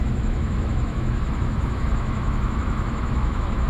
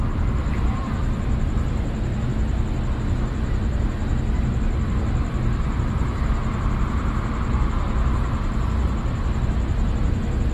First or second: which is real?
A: second